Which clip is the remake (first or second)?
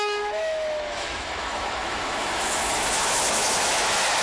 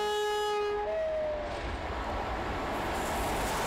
first